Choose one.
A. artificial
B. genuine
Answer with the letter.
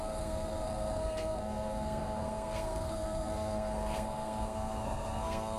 A